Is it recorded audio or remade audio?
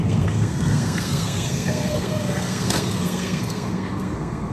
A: remade